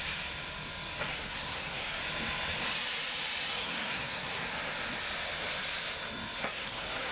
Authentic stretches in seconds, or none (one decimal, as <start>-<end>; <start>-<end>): 0.0-1.1; 2.0-3.6; 4.5-6.4